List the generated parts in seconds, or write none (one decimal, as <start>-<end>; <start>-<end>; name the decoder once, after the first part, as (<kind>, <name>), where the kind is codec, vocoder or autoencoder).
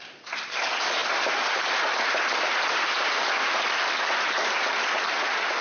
1.0-3.5 (vocoder, BigVGAN v2)